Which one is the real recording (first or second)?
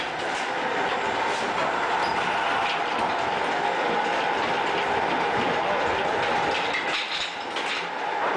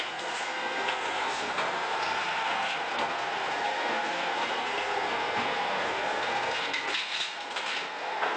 first